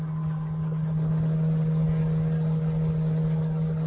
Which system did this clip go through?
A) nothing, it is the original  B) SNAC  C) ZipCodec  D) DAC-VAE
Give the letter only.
A